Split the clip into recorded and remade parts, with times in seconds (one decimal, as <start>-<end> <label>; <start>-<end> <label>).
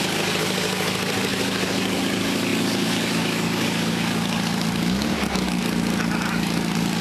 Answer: 0.0-7.0 remade